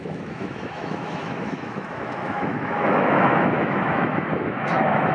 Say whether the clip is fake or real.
fake